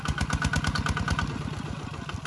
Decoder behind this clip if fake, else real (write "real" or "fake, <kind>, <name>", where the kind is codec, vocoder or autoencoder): real